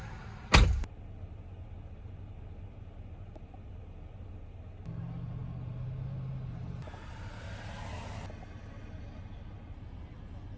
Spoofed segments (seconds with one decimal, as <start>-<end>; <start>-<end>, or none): none